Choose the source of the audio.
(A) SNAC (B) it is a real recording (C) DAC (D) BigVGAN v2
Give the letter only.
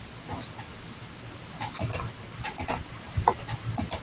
B